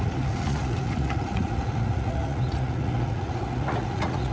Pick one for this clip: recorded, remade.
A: remade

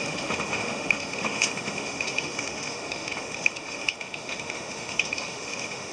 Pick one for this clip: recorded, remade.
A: remade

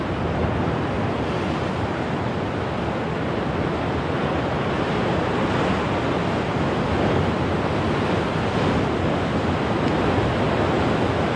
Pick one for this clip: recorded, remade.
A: recorded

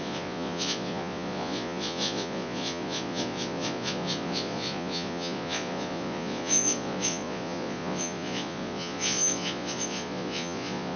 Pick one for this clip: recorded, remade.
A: remade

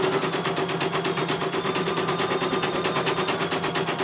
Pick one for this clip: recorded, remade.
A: recorded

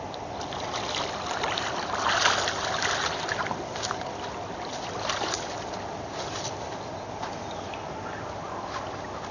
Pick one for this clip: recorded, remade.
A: recorded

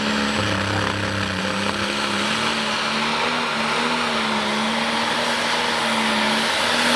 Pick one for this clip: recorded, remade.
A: recorded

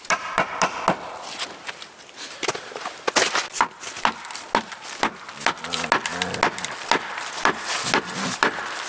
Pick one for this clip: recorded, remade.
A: recorded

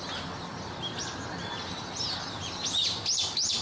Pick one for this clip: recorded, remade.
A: recorded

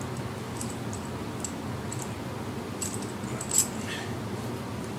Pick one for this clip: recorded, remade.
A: recorded